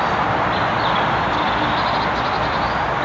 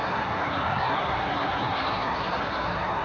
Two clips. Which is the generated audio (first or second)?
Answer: second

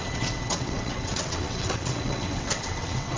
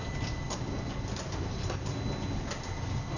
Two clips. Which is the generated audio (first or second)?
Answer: first